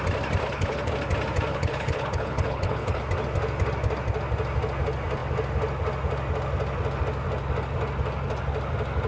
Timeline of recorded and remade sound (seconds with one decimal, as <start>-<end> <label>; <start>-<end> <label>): 0.0-0.4 recorded; 0.4-0.9 remade; 0.9-1.5 recorded; 1.5-3.0 remade; 3.0-9.1 recorded